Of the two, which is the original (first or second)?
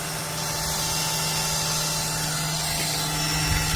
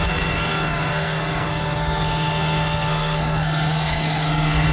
first